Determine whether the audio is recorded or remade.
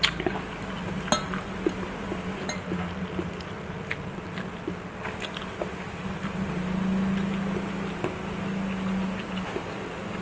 recorded